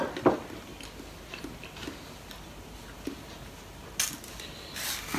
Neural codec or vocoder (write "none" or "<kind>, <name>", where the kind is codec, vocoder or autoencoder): none